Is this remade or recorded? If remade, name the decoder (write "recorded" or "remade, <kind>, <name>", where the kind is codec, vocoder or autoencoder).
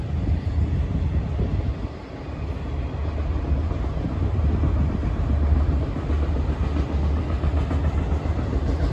recorded